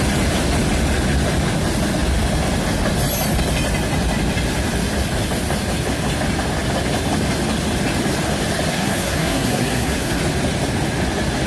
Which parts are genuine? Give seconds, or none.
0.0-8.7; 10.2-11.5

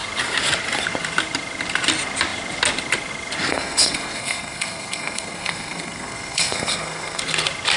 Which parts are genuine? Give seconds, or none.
0.0-3.5; 7.2-7.8

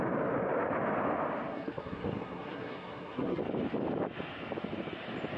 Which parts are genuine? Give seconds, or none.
0.0-1.5; 3.4-5.4

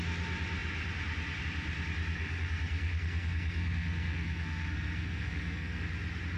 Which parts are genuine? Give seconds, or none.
0.0-2.1; 5.9-6.4

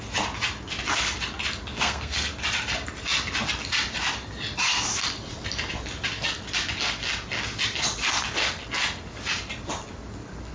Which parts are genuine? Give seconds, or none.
0.0-1.7; 2.3-10.5

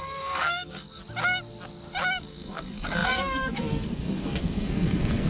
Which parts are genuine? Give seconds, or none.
1.0-2.2

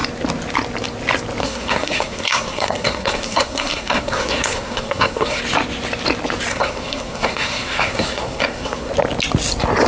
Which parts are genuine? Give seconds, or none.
0.0-1.4; 5.4-6.5; 8.9-9.9